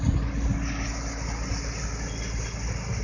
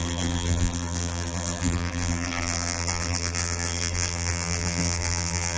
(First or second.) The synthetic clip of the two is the second